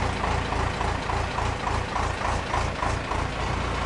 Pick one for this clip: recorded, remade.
recorded